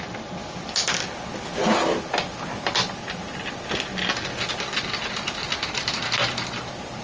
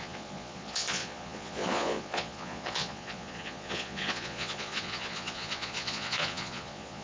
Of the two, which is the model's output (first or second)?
second